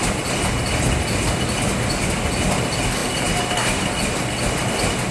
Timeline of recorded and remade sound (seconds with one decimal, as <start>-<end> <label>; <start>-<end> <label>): 0.0-5.1 recorded